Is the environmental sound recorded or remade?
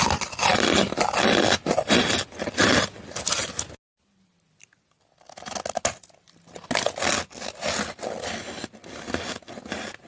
recorded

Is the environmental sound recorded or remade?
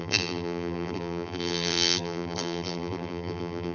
remade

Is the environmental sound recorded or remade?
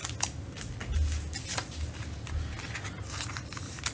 recorded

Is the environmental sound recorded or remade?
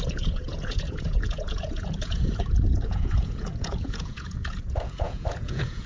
remade